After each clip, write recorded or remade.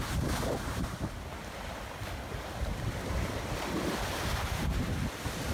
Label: recorded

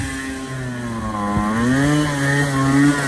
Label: recorded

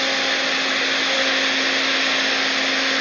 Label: recorded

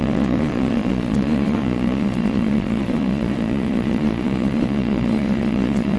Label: remade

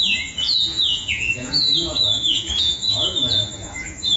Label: remade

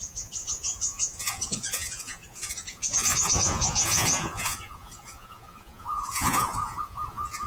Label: remade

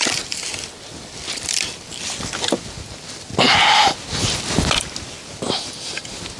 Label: recorded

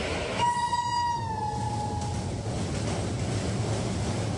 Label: recorded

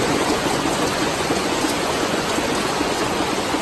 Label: remade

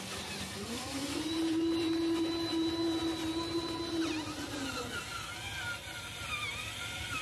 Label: recorded